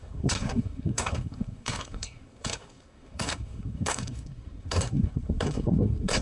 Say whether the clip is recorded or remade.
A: remade